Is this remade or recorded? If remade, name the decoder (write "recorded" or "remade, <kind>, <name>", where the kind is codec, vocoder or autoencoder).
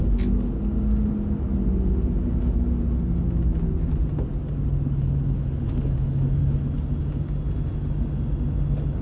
recorded